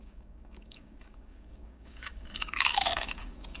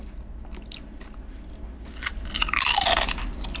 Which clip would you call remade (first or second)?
first